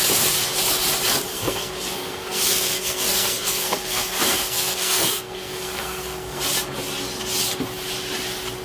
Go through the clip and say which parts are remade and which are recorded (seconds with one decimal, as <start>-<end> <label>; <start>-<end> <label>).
0.0-1.3 recorded; 1.3-6.4 remade; 6.4-8.6 recorded